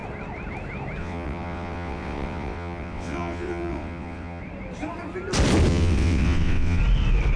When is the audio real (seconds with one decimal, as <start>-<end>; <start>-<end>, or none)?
0.0-1.0; 4.4-5.7; 6.8-7.4